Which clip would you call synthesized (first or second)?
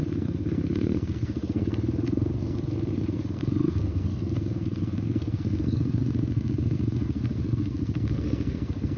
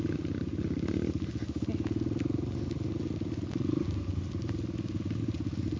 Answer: first